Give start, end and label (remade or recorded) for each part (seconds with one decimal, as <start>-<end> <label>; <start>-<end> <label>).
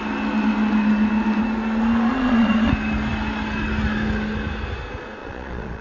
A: 0.0-2.1 recorded; 2.1-2.7 remade; 2.7-5.2 recorded; 5.2-5.8 remade